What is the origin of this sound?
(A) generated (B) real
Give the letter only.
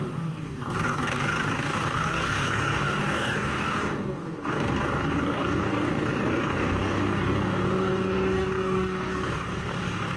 A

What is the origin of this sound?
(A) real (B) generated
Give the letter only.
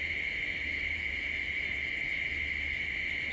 A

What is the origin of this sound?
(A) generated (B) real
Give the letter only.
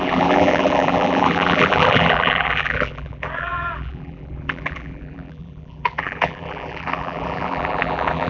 A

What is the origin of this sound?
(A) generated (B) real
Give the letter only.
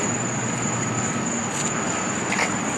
B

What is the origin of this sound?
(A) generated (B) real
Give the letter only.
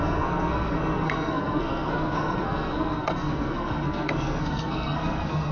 A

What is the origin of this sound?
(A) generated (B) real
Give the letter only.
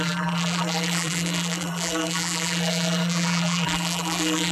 A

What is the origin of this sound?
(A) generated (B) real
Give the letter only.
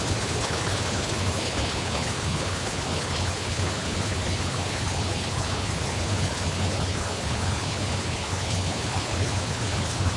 A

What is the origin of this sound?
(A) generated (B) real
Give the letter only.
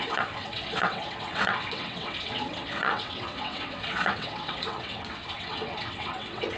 A